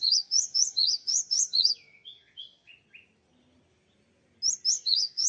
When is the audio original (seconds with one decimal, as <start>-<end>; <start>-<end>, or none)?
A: 2.7-4.7